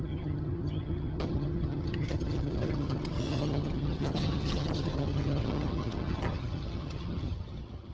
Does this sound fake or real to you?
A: fake